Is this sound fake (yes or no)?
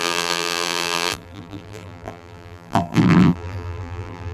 yes